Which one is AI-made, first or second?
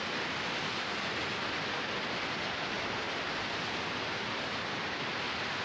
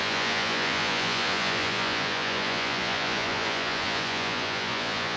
second